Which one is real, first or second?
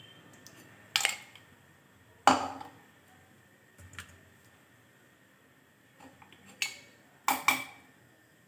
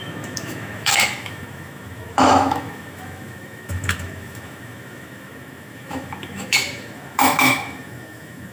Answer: first